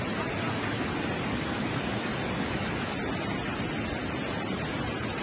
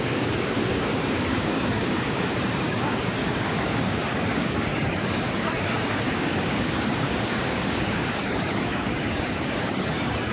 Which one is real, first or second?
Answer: first